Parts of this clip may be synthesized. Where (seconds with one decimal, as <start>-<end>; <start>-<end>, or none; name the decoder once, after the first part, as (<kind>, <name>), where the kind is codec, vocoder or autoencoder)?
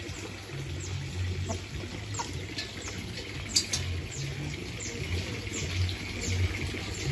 none